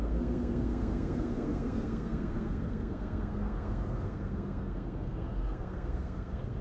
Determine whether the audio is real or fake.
fake